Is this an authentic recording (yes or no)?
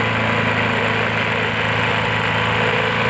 yes